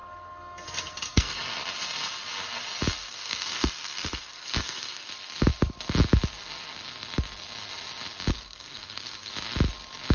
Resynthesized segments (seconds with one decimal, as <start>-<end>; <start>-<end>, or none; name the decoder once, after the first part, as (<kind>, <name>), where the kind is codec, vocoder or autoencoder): 0.0-1.4 (codec, SNAC); 3.0-5.1; 8.3-9.3